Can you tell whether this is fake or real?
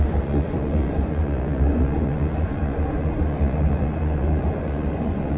fake